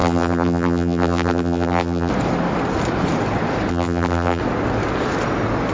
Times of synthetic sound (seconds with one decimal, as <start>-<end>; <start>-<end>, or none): 0.0-2.1; 3.7-4.4